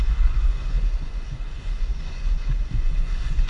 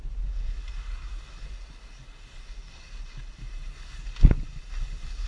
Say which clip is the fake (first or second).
first